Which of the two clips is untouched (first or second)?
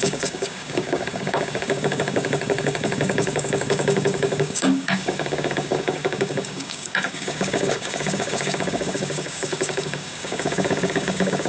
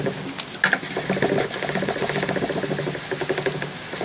second